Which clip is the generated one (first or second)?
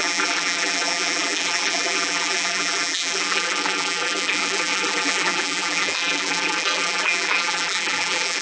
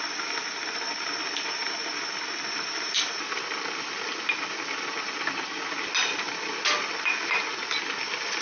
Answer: first